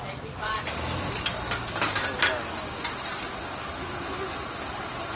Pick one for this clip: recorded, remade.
recorded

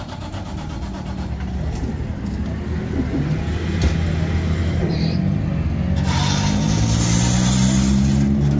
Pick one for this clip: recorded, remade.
recorded